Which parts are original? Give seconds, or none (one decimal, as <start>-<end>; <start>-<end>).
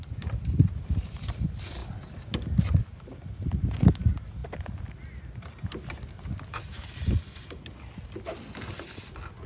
0.0-9.5